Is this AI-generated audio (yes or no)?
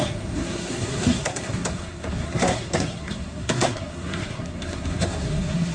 yes